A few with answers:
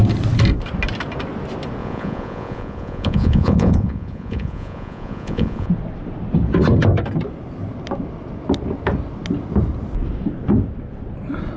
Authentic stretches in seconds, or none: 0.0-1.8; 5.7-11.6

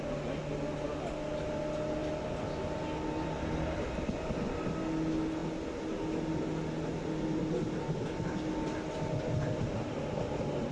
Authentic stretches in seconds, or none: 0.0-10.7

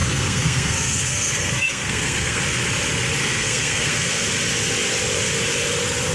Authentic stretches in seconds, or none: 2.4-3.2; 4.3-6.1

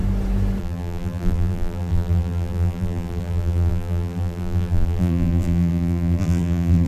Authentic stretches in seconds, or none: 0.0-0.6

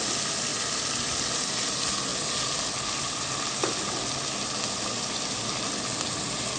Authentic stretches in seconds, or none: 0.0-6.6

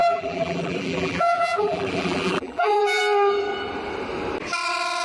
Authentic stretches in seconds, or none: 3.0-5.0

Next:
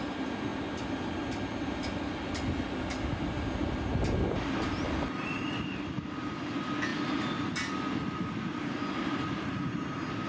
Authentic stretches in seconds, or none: 0.0-10.3